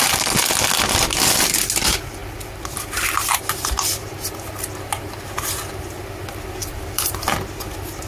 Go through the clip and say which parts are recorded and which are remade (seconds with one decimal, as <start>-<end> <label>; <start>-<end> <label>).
0.0-2.2 recorded; 2.2-3.4 remade; 3.4-6.6 recorded; 6.6-7.3 remade; 7.3-8.1 recorded